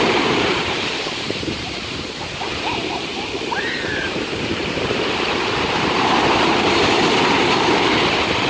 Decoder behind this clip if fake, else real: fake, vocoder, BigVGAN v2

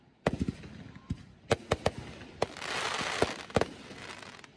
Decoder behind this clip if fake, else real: real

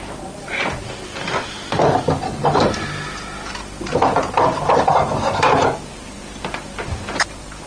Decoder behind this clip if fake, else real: fake, vocoder, BigVGAN v2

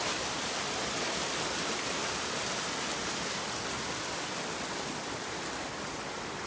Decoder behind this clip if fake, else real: real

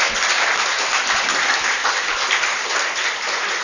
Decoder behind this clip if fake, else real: fake, vocoder, BigVGAN v2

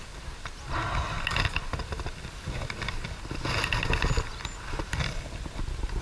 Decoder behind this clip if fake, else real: real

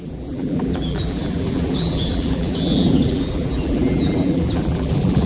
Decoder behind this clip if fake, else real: fake, vocoder, BigVGAN v2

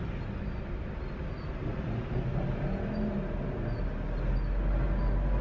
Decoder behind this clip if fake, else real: real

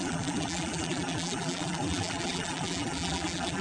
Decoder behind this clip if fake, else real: fake, vocoder, BigVGAN v2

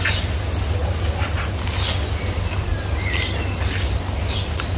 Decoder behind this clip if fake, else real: real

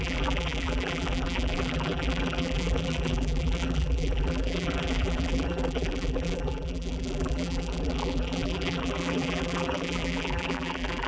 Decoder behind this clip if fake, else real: fake, vocoder, BigVGAN v2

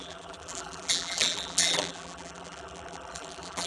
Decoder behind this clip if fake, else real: fake, vocoder, BigVGAN v2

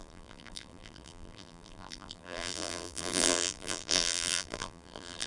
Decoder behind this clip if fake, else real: fake, vocoder, BigVGAN v2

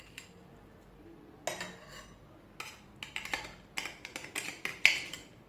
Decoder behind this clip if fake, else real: real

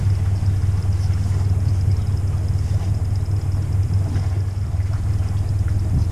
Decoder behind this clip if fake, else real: real